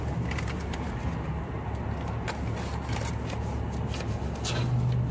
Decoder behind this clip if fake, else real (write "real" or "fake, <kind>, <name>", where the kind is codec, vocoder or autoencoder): real